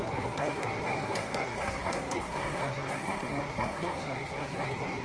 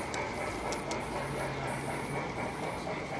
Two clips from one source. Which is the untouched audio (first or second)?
second